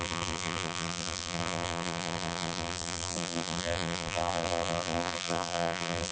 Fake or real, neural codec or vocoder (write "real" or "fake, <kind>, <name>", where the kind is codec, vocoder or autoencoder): fake, vocoder, BigVGAN v2